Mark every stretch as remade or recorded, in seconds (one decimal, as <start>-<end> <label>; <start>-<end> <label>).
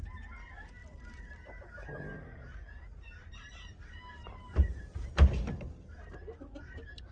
0.0-0.8 recorded; 0.8-4.8 remade; 4.8-7.1 recorded